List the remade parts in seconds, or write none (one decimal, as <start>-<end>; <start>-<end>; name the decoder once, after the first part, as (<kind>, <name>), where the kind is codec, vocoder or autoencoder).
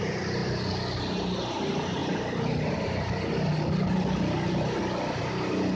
0.4-1.0 (vocoder, BigVGAN v2)